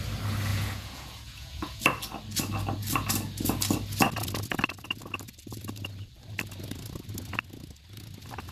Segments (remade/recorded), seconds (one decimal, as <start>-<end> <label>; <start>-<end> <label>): 0.0-0.5 recorded; 0.5-1.8 remade; 1.8-8.5 recorded